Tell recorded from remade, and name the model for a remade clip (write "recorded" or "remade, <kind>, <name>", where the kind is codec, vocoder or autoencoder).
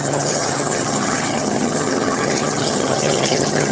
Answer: remade, vocoder, HiFi-GAN